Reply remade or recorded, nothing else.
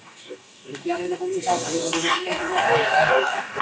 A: remade